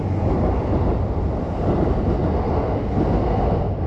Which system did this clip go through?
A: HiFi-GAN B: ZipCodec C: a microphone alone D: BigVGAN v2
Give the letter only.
C